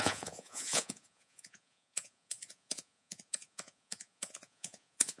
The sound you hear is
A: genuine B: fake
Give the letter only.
B